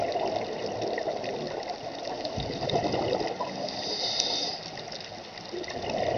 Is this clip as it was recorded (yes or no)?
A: yes